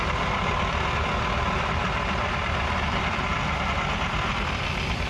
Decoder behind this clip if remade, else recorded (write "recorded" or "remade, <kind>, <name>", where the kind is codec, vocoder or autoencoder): recorded